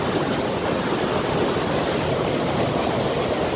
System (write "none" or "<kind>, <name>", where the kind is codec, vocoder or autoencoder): none